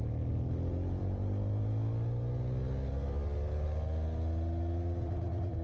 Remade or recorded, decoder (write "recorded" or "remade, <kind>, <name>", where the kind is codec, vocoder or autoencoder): recorded